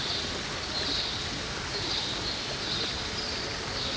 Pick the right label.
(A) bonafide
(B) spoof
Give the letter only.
A